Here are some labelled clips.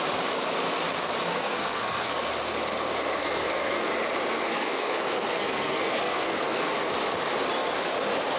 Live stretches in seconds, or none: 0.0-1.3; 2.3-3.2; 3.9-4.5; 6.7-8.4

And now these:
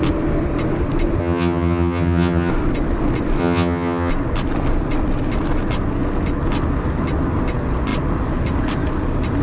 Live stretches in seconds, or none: 0.0-1.2; 2.5-3.4; 4.1-9.4

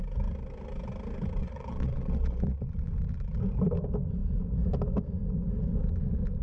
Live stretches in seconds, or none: 0.0-1.4; 2.7-6.4

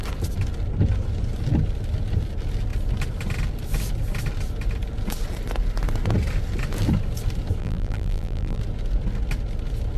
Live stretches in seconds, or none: 0.0-7.6; 8.6-10.0

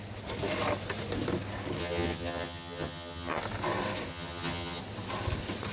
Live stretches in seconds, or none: 0.0-1.8; 3.4-4.1; 4.8-5.7